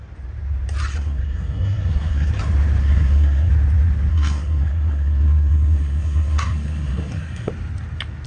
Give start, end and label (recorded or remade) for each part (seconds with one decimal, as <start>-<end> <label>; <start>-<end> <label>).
0.0-0.9 recorded; 0.9-2.3 remade; 2.3-2.8 recorded; 2.8-3.5 remade; 3.5-4.1 recorded; 4.1-7.5 remade; 7.5-8.3 recorded